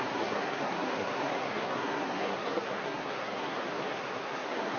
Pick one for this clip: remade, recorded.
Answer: remade